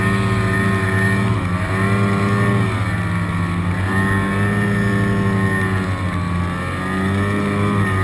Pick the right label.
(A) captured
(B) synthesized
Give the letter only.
A